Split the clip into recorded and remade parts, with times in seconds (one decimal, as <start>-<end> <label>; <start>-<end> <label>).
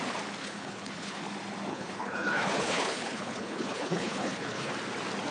0.0-0.4 recorded; 0.4-1.2 remade; 1.2-1.7 recorded; 1.7-4.7 remade; 4.7-5.3 recorded